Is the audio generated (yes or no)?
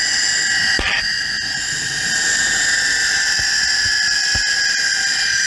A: no